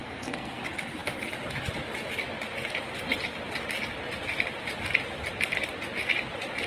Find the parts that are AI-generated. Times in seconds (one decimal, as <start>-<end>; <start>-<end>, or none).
0.0-0.6